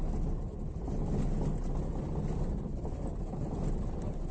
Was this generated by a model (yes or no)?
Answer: no